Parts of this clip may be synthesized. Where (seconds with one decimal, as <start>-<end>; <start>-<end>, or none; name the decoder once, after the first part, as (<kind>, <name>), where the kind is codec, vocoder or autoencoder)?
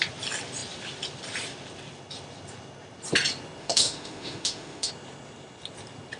3.6-4.9 (autoencoder, DAC-VAE)